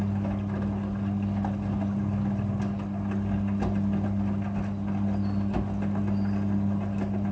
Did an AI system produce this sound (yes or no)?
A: no